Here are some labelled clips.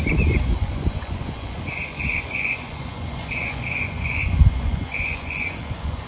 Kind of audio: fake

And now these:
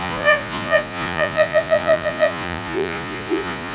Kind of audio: fake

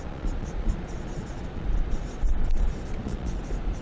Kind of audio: fake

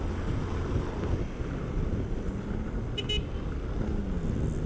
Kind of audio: real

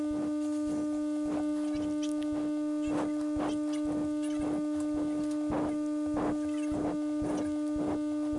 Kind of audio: real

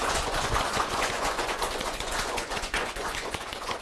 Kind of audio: fake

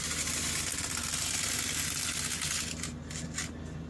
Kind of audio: real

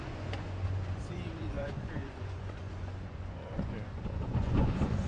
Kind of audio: fake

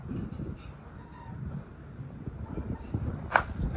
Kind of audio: real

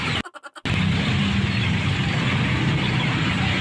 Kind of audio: real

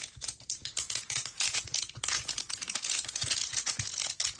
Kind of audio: fake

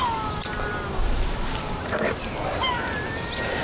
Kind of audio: real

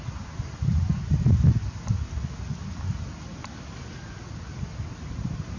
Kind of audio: real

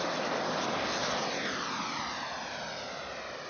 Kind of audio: real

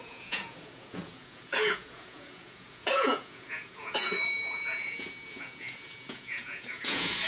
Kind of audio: fake